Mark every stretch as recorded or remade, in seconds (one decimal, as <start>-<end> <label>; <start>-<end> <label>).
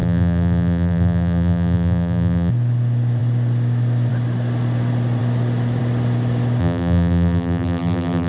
0.0-2.5 remade; 2.5-6.6 recorded; 6.6-8.3 remade